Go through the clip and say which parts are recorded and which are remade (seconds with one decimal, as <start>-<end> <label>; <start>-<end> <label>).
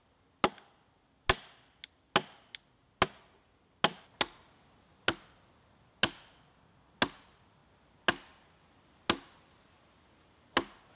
0.0-11.0 recorded